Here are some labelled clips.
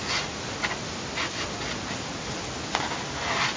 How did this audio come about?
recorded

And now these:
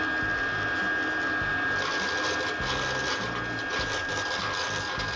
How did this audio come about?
recorded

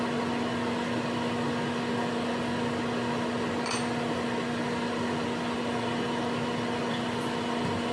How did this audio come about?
recorded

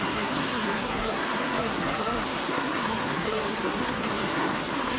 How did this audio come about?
remade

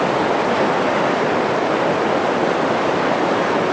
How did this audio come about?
recorded